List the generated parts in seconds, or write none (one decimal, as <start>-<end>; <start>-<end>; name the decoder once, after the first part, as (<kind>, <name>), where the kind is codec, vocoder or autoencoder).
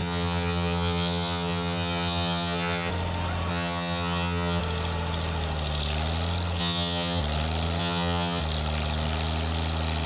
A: 0.0-2.9 (vocoder, HiFi-GAN); 3.5-4.6; 6.6-7.2; 7.8-8.4